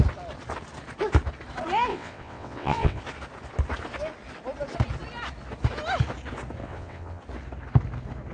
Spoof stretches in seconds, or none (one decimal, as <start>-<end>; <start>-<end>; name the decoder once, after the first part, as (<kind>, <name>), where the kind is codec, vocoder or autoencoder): 1.9-3.0 (vocoder, WaveNeXt); 6.6-7.2